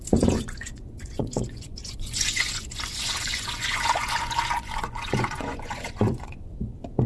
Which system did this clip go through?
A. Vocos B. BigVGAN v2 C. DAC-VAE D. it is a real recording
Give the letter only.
A